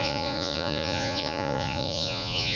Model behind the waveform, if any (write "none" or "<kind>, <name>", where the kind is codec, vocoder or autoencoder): vocoder, Vocos